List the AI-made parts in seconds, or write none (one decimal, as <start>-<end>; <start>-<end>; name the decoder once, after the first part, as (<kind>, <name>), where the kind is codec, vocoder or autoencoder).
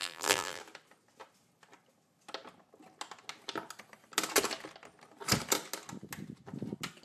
0.0-0.6 (vocoder, BigVGAN v2)